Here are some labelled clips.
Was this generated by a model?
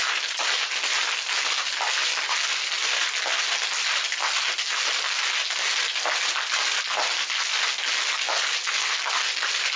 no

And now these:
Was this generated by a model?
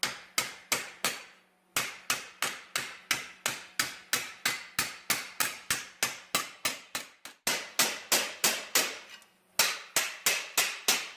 no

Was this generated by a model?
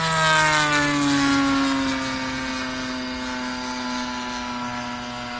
no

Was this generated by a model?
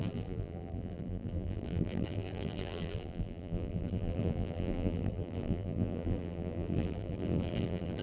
yes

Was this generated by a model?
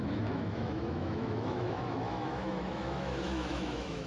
yes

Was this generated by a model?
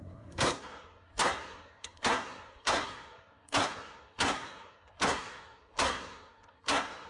yes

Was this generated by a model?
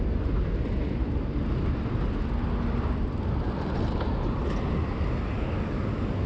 no